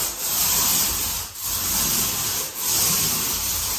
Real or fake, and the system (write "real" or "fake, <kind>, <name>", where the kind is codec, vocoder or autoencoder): real